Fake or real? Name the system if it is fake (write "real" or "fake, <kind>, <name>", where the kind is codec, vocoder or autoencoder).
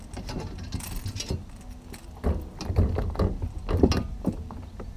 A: real